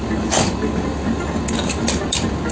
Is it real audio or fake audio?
real